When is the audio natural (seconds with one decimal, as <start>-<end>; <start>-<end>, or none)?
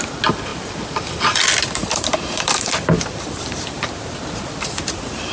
0.0-1.8